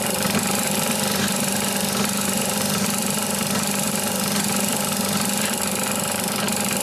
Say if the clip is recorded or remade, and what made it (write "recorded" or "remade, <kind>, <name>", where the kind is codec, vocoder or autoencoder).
remade, vocoder, BigVGAN v2